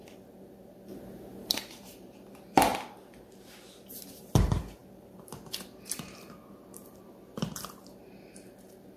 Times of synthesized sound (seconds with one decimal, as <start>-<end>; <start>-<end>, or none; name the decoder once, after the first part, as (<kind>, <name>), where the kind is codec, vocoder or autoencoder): 0.0-0.9 (vocoder, BigVGAN v2); 1.5-2.7; 4.1-9.0